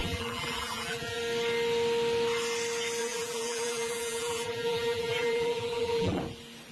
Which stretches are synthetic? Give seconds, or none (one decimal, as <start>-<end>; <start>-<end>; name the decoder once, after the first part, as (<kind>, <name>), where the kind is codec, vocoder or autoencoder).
0.0-1.2 (vocoder, BigVGAN v2); 3.0-6.2